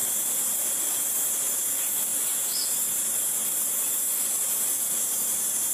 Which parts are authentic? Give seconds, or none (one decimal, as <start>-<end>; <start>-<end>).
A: none

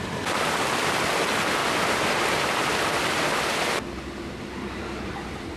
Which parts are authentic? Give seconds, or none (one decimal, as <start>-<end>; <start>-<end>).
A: 0.0-1.6; 2.9-5.6

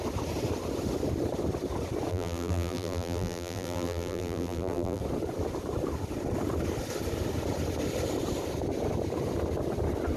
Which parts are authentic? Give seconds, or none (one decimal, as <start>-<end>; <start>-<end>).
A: 0.0-2.1; 5.0-10.2

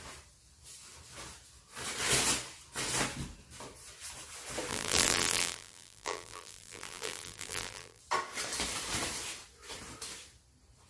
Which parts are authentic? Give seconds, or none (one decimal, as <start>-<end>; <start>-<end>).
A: 0.0-4.7; 8.0-10.9

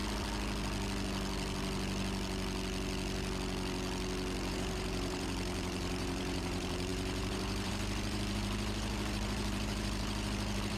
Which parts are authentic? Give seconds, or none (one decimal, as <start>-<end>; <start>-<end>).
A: 0.0-4.5

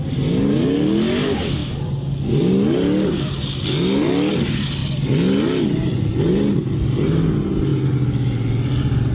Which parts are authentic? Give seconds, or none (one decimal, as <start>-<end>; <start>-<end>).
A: 0.0-4.8; 6.7-9.1